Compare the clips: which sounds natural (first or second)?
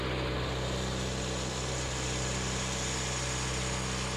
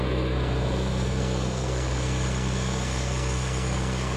first